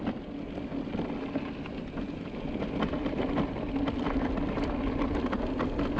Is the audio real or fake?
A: real